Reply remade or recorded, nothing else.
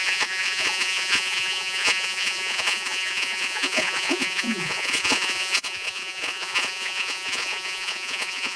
remade